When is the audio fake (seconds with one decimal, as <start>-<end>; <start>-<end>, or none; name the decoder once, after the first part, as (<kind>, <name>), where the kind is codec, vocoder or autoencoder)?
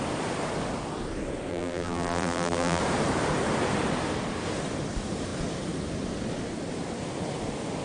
1.5-2.8 (vocoder, BigVGAN v2)